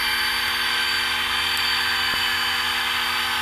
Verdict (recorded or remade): recorded